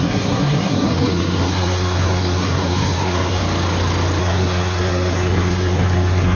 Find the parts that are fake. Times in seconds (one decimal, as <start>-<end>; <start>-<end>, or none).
0.0-3.4; 4.2-6.3